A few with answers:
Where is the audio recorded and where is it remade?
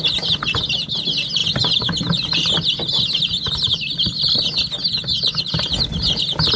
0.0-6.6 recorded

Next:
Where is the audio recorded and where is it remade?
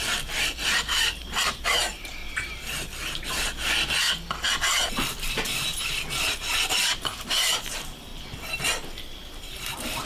0.0-2.2 remade; 2.2-5.3 recorded; 5.3-5.7 remade; 5.7-7.5 recorded; 7.5-8.1 remade; 8.1-9.3 recorded; 9.3-10.1 remade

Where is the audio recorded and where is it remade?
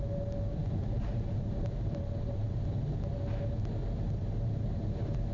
0.0-0.6 recorded; 0.6-2.5 remade; 2.5-5.3 recorded